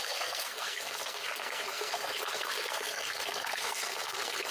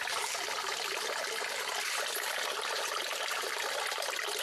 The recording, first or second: second